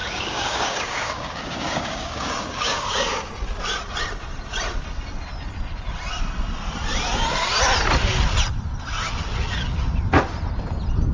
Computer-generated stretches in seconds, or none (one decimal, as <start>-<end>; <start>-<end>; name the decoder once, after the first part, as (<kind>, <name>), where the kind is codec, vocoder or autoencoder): 0.0-3.3 (codec, DAC)